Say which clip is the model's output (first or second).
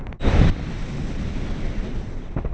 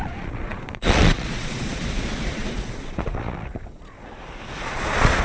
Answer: second